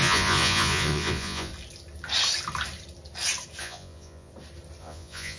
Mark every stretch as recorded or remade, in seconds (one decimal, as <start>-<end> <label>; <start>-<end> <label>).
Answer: 0.0-1.5 remade; 1.5-3.6 recorded; 3.6-4.3 remade; 4.3-4.8 recorded; 4.8-5.4 remade

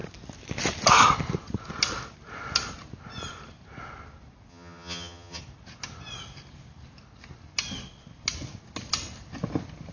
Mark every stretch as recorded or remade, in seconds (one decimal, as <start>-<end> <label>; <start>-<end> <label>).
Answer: 0.0-4.5 recorded; 4.5-5.4 remade; 5.4-9.9 recorded

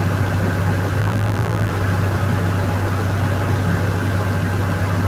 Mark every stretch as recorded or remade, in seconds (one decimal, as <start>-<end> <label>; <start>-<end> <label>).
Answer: 0.0-1.0 recorded; 1.0-1.7 remade; 1.7-5.1 recorded